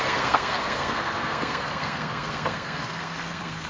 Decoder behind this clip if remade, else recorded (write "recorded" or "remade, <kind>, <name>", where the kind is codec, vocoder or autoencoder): remade, codec, SNAC